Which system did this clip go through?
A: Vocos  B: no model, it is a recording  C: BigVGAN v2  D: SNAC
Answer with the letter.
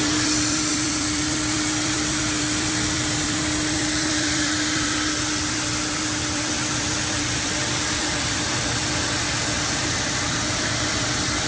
C